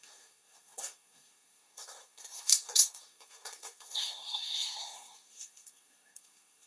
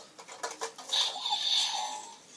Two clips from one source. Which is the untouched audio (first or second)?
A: second